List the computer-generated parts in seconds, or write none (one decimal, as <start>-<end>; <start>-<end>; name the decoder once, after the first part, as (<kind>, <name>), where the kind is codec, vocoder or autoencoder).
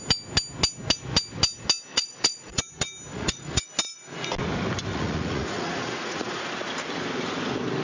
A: 1.9-2.6 (vocoder, Vocos); 3.1-3.7; 4.9-6.5